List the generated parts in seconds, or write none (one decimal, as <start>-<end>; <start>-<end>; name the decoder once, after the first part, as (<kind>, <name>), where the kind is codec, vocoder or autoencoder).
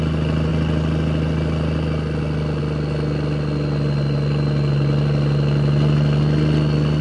none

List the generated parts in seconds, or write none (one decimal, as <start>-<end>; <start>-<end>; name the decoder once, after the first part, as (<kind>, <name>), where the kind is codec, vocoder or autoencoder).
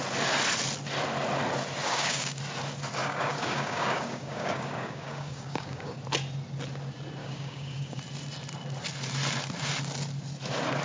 1.8-2.4 (codec, DAC); 3.0-6.0; 7.2-8.0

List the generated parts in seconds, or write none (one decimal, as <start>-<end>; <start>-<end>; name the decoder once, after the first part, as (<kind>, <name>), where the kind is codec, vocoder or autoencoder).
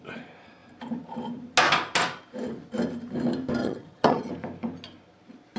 3.6-4.3 (vocoder, HiFi-GAN)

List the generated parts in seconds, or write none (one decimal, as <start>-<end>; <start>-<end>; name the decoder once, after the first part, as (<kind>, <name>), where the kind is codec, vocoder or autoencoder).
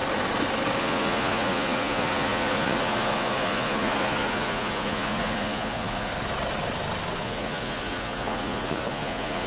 0.8-6.1 (vocoder, Vocos); 7.2-9.5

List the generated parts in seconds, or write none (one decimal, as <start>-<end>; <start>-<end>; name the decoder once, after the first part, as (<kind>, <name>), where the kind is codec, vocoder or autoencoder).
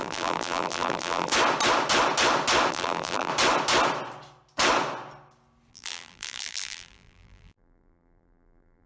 0.0-1.3 (vocoder, BigVGAN v2); 2.7-3.3; 5.7-8.9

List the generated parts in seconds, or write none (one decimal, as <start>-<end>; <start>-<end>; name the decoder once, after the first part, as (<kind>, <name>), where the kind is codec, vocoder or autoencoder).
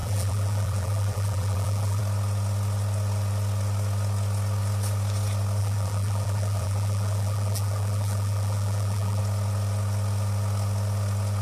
0.0-2.0 (vocoder, BigVGAN v2); 5.6-9.2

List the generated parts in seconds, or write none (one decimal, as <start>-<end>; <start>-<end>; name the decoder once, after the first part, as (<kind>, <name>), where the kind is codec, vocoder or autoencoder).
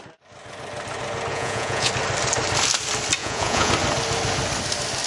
1.3-1.9 (vocoder, Vocos); 3.2-3.7